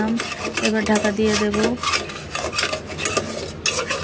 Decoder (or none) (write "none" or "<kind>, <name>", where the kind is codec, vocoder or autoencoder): none